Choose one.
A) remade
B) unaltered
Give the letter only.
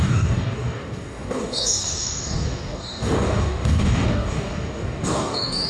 A